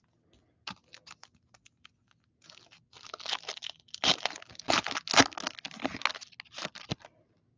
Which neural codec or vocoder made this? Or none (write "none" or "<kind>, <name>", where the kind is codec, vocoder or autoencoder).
none